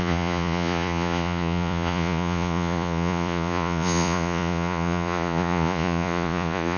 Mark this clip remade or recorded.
remade